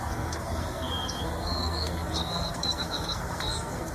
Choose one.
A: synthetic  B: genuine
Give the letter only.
A